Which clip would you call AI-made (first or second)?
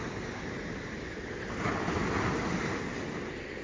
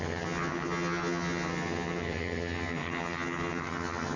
second